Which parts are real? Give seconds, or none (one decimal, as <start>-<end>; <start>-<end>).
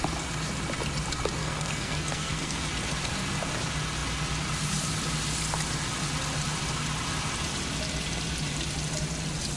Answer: 0.0-1.4; 2.7-9.6